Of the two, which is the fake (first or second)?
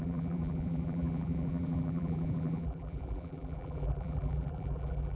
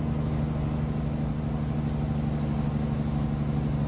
first